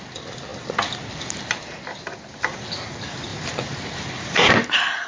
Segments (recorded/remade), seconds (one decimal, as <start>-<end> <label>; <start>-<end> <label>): 0.0-5.1 recorded